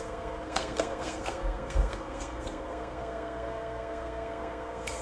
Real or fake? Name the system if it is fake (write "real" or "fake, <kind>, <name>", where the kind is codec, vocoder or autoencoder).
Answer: fake, codec, SNAC